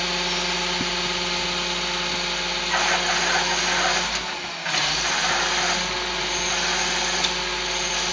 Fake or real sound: real